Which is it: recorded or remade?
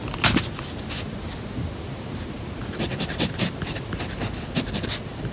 recorded